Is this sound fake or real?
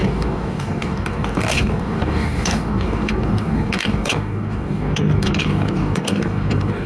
fake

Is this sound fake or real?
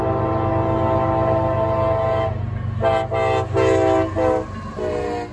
real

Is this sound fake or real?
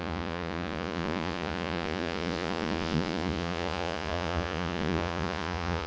fake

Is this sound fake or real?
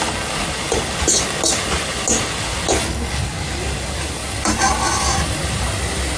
real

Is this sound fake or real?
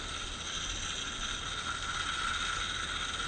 real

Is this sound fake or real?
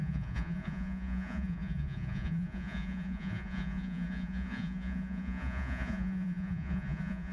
fake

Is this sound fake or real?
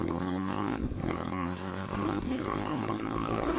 fake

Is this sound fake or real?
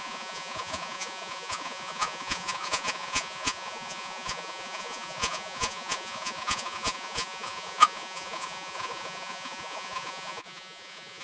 fake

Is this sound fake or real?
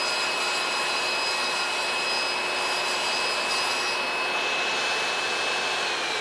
real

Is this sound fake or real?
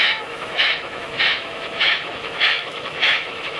fake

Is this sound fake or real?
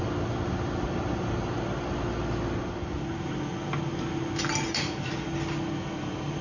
real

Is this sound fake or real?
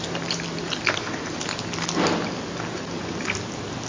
real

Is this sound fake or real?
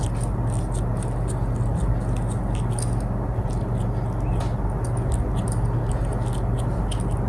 real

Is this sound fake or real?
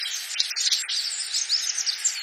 real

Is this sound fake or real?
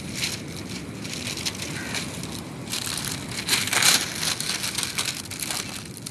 real